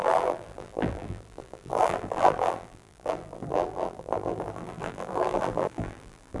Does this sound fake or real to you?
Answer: fake